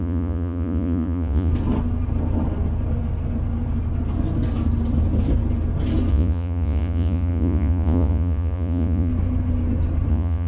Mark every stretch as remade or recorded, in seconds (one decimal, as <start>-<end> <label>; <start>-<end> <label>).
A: 0.0-1.5 remade; 1.5-6.1 recorded; 6.1-9.1 remade; 9.1-10.1 recorded; 10.1-10.5 remade